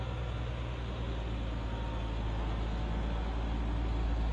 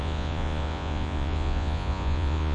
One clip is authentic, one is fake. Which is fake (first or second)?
second